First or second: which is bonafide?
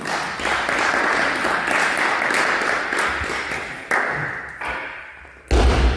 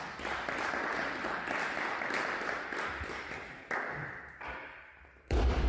first